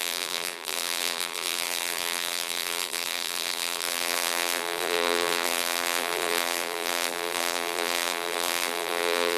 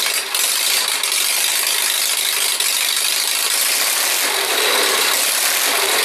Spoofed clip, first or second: first